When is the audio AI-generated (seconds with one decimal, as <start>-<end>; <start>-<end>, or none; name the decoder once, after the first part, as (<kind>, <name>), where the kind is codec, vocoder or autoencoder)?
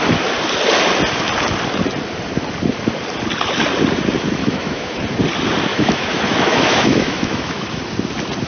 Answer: 4.4-5.0 (autoencoder, DAC-VAE); 5.7-7.8